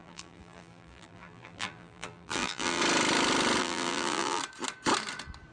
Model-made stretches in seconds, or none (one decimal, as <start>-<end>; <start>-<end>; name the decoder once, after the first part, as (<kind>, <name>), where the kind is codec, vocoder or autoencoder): 0.0-2.8 (vocoder, BigVGAN v2); 3.6-4.4